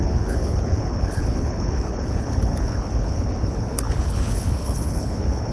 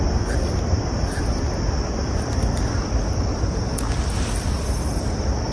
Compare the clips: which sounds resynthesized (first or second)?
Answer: first